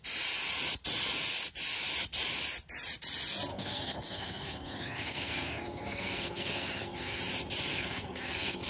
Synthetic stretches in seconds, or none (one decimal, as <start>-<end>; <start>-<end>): 3.5-7.2; 7.7-8.7